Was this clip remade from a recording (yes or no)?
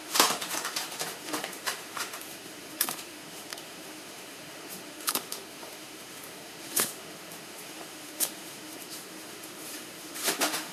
yes